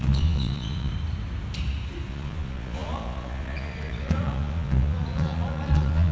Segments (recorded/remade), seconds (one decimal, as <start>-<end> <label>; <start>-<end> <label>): 0.0-0.9 remade; 0.9-2.1 recorded; 2.1-6.1 remade